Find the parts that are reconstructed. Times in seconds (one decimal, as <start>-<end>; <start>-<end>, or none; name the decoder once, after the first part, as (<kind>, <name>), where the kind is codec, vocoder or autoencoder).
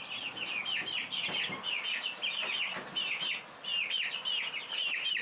none